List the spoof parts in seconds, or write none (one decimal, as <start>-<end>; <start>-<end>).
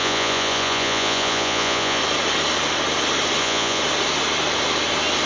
0.0-2.0; 3.4-3.8